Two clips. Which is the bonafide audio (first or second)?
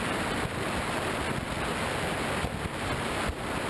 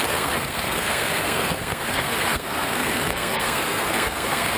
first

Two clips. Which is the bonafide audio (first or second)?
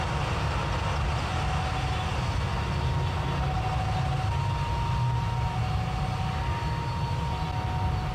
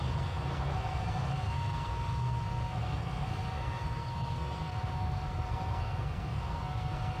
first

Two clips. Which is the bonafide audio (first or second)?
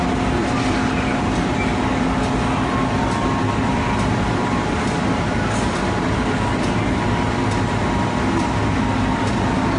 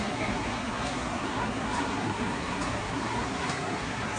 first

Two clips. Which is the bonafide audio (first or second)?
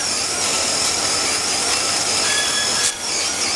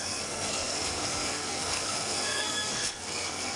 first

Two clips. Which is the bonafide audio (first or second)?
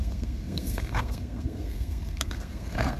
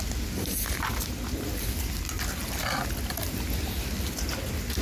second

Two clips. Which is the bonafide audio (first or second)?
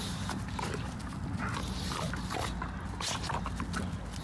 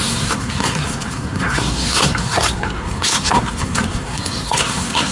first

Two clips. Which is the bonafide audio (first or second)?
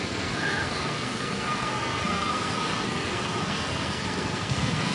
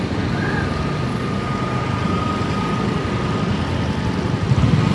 second